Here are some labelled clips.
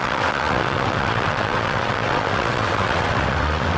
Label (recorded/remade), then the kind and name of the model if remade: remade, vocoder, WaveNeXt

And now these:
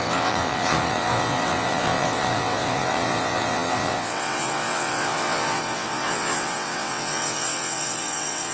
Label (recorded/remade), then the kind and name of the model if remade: remade, vocoder, WaveNeXt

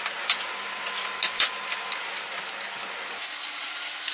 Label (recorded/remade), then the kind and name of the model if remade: recorded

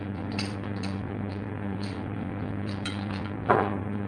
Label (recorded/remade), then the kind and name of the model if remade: remade, vocoder, WaveNeXt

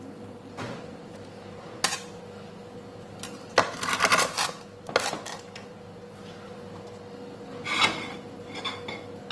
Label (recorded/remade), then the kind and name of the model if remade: recorded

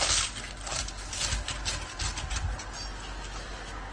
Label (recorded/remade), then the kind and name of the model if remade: recorded